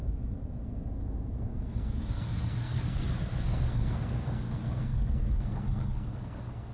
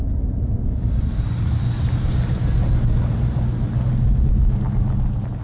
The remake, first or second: first